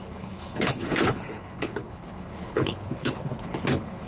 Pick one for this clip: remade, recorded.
remade